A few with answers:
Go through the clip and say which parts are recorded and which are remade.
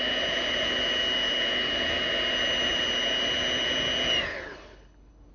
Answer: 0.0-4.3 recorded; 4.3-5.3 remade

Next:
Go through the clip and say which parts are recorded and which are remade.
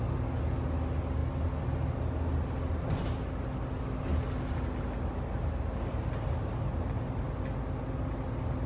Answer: 0.0-8.7 recorded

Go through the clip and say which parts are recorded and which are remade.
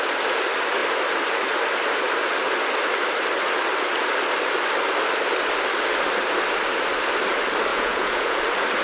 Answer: 0.0-7.7 recorded; 7.7-8.4 remade; 8.4-8.8 recorded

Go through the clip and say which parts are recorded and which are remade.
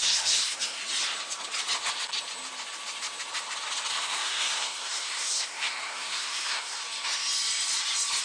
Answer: 0.0-0.8 remade; 0.8-3.9 recorded; 3.9-6.8 remade; 6.8-8.2 recorded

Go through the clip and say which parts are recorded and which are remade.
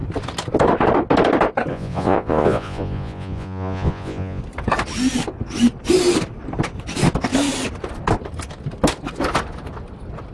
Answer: 0.0-1.7 recorded; 1.7-4.4 remade; 4.4-10.3 recorded